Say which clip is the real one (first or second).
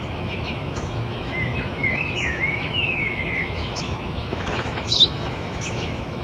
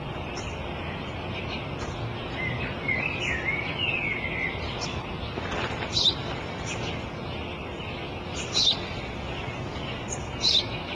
second